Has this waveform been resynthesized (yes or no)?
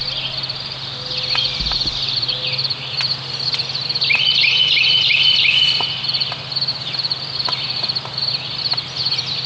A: no